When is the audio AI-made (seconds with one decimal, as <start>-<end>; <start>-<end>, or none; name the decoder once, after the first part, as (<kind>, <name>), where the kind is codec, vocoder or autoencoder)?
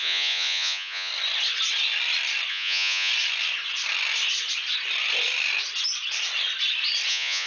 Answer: 0.0-1.1 (vocoder, Vocos); 2.5-3.1; 7.1-7.5